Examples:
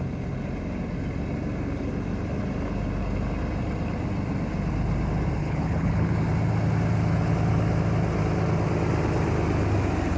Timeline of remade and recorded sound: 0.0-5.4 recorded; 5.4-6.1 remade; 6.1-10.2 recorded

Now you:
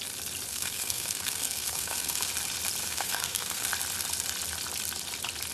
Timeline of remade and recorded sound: 0.0-0.5 recorded; 0.5-2.3 remade; 2.3-2.8 recorded; 2.8-3.7 remade; 3.7-5.5 recorded

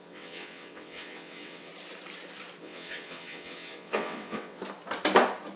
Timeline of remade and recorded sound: 0.0-1.7 remade; 1.7-2.6 recorded; 2.6-4.6 remade; 4.6-5.6 recorded

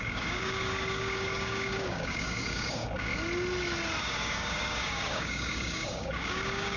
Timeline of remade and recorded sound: 0.0-3.1 remade; 3.1-4.0 recorded; 4.0-6.8 remade

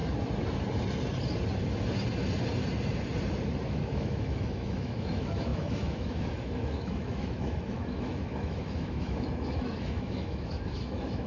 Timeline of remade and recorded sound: 0.0-3.7 recorded; 3.7-11.3 remade

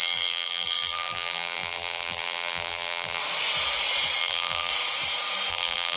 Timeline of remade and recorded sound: 0.0-3.2 remade; 3.2-4.2 recorded; 4.2-4.7 remade; 4.7-5.5 recorded; 5.5-6.0 remade